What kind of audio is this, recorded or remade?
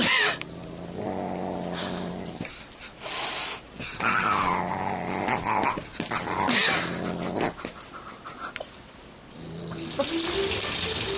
recorded